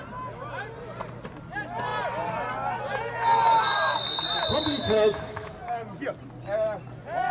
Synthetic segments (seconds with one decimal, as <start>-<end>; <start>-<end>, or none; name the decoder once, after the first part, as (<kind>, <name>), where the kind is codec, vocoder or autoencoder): 4.8-5.5 (autoencoder, DAC-VAE)